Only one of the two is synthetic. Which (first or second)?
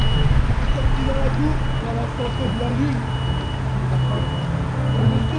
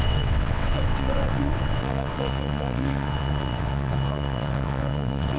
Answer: second